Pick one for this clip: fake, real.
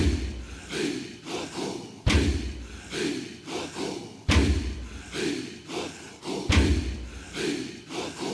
real